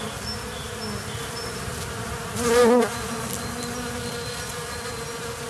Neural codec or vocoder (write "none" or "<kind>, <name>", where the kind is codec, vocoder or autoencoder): none